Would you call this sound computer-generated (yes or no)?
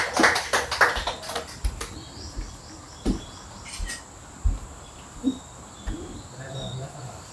yes